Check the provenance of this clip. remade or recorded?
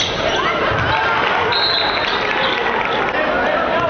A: recorded